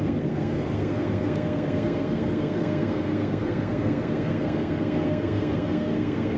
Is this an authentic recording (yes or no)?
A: no